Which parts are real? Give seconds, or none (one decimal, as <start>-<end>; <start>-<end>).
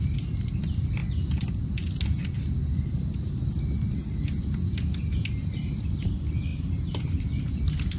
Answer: 1.0-5.2